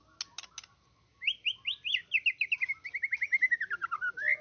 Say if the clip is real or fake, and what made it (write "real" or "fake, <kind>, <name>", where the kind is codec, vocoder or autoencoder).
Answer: real